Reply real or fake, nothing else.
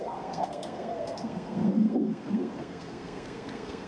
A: fake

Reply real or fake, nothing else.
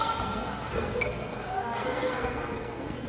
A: fake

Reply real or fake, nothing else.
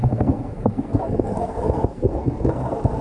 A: fake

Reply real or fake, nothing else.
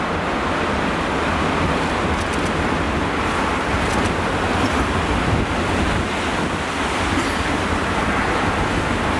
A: real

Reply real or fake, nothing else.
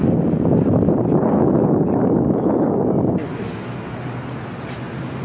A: real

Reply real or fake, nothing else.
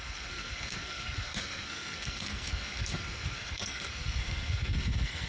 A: fake